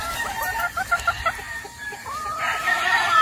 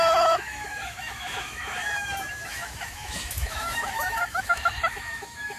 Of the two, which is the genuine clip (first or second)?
first